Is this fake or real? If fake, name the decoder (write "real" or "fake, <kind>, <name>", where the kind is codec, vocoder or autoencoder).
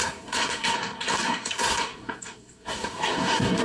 fake, codec, SNAC